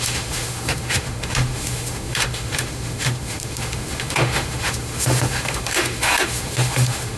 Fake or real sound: fake